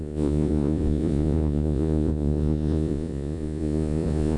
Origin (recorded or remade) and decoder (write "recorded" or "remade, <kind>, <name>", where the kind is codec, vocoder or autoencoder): remade, vocoder, Vocos